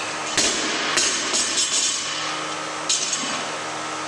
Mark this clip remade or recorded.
recorded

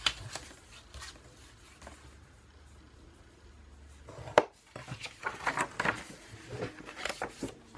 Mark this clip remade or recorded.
recorded